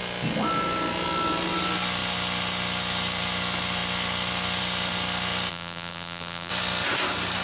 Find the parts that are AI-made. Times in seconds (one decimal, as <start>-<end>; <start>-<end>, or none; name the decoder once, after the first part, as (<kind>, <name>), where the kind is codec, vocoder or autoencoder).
5.5-6.5 (vocoder, BigVGAN v2)